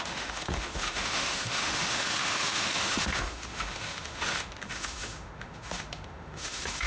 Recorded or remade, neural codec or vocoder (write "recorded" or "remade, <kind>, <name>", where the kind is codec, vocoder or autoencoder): remade, autoencoder, DAC-VAE